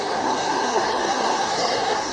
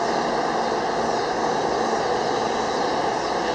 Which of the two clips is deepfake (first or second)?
first